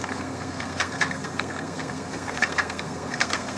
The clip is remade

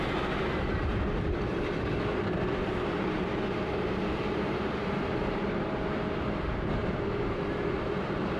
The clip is remade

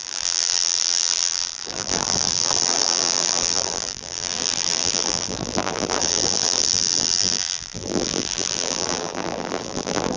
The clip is remade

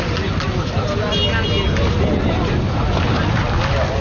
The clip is recorded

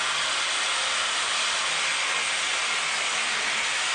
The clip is recorded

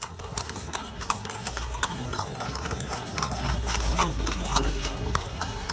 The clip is remade